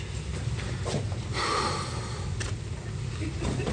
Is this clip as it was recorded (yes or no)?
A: yes